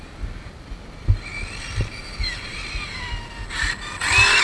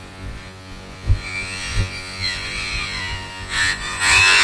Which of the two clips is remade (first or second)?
second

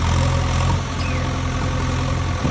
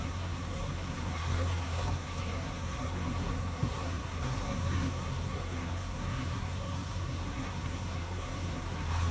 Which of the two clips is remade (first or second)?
second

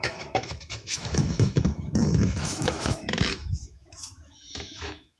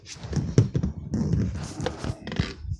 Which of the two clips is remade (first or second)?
first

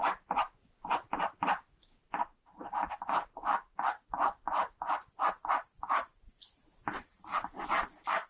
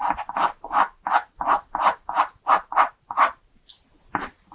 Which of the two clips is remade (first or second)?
first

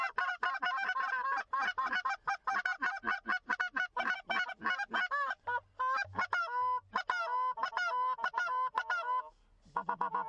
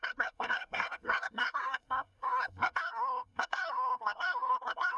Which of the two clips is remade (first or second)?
second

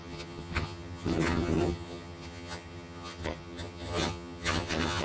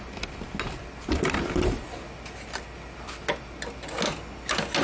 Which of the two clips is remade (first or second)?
first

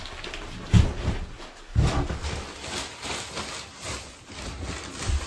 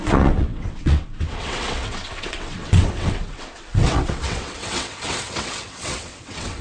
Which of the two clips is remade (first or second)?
second